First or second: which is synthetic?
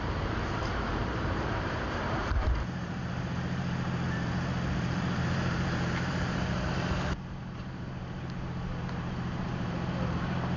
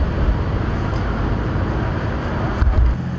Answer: first